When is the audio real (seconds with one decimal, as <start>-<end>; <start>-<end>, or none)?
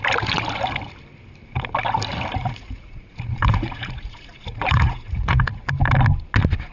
0.0-2.4; 5.7-6.7